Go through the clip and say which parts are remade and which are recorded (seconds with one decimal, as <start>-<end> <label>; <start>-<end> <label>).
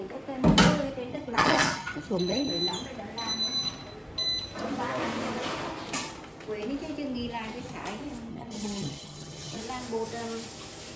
0.0-1.1 recorded; 1.1-2.5 remade; 2.5-8.3 recorded; 8.3-9.6 remade; 9.6-11.0 recorded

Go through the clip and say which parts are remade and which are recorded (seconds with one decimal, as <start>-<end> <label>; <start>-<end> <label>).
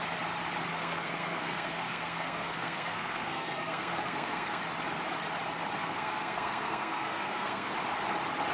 0.0-0.7 recorded; 0.7-4.6 remade; 4.6-5.8 recorded; 5.8-7.7 remade; 7.7-8.5 recorded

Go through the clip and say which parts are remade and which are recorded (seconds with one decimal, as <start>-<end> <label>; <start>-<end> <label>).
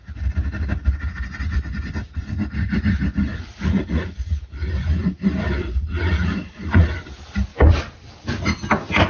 0.0-3.3 recorded; 3.3-4.5 remade; 4.5-5.6 recorded; 5.6-6.9 remade; 6.9-9.1 recorded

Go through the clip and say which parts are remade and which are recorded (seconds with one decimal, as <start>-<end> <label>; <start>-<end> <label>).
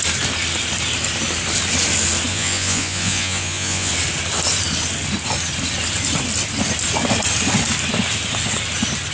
0.0-2.3 recorded; 2.3-3.9 remade; 3.9-9.1 recorded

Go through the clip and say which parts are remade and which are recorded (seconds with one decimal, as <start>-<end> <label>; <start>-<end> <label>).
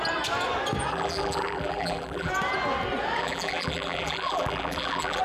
0.0-0.9 recorded; 0.9-2.3 remade; 2.3-3.2 recorded; 3.2-5.2 remade